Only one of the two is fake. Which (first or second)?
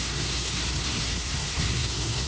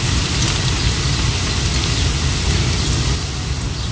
first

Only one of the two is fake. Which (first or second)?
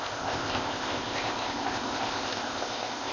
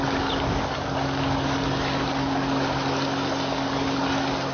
first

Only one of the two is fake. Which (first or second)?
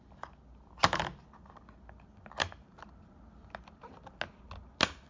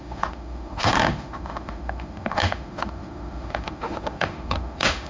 second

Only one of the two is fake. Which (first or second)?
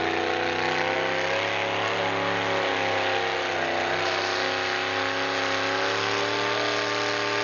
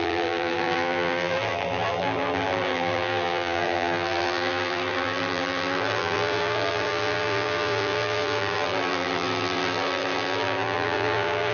second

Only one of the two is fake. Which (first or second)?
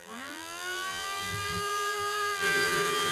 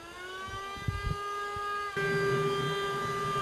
first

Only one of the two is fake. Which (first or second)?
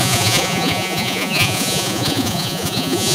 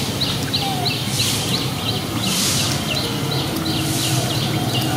first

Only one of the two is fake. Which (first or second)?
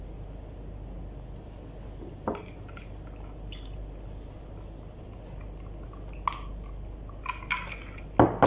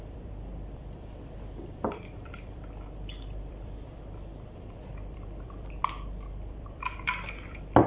second